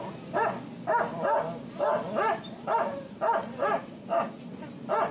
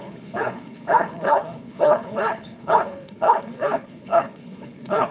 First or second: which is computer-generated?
second